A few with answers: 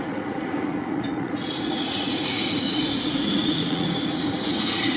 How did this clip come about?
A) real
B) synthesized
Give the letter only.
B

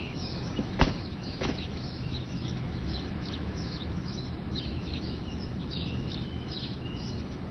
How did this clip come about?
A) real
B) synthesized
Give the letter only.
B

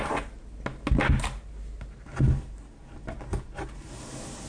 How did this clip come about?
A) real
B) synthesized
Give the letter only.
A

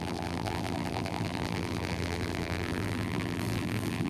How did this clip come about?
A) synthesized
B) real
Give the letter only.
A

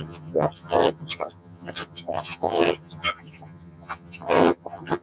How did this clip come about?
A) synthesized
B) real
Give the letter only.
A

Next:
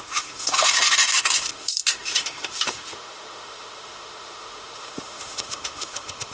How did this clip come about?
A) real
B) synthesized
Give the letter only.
B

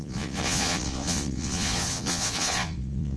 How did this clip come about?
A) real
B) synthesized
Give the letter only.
B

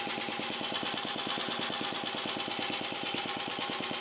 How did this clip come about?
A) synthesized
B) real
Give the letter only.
B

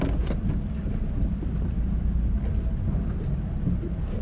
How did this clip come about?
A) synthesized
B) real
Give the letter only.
B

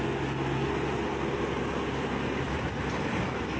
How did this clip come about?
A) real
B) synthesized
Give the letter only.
A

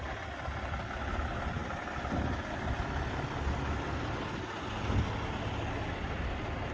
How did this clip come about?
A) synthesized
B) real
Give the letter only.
B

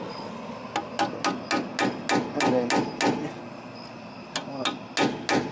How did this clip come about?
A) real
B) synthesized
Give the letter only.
A